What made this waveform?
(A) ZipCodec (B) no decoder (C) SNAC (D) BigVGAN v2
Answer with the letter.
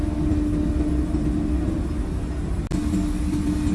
B